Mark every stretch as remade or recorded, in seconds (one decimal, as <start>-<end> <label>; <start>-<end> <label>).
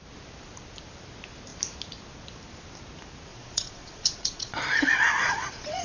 0.0-3.3 recorded; 3.3-5.8 remade